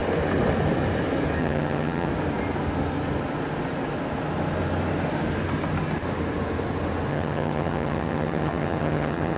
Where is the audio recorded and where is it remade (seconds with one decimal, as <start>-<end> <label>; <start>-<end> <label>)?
0.0-1.4 recorded; 1.4-2.1 remade; 2.1-7.1 recorded; 7.1-9.4 remade